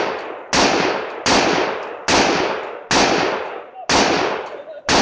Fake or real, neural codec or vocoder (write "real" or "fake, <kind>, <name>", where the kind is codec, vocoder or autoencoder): real